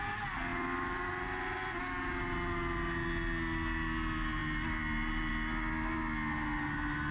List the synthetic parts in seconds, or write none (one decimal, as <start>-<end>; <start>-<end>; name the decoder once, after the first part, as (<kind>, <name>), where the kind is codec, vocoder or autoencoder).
none